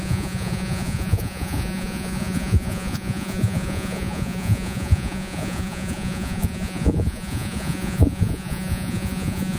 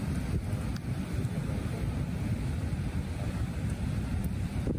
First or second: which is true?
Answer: second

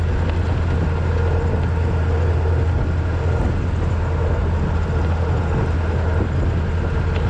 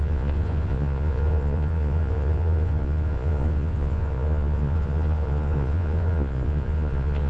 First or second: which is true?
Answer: first